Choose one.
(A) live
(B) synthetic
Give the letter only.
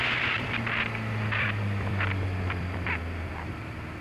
B